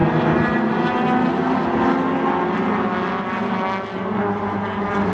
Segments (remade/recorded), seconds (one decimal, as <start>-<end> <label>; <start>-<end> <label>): 0.0-5.1 recorded